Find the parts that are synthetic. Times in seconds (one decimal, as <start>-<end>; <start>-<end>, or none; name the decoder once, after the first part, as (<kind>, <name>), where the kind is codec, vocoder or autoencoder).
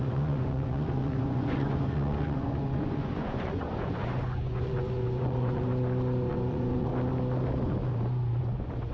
0.0-5.7 (vocoder, Vocos); 6.3-6.9; 8.4-8.9